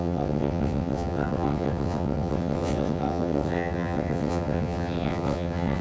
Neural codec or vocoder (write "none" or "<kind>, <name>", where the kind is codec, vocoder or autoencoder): vocoder, WaveNeXt